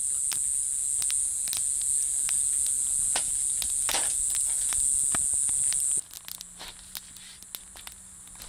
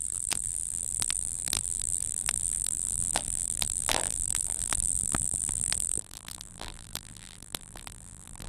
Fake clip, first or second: second